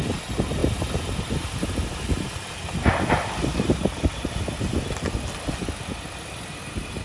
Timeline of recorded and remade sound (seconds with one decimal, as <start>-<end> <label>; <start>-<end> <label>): 0.0-7.0 recorded